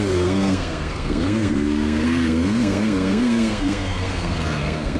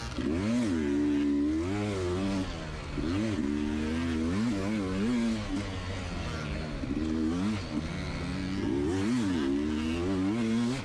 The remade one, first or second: first